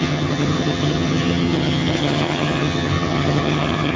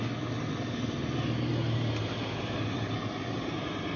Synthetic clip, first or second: first